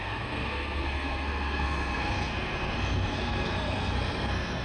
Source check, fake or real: fake